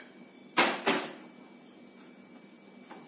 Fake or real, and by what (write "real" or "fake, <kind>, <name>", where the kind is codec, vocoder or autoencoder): real